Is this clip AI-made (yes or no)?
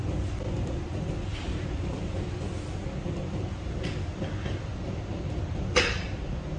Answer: no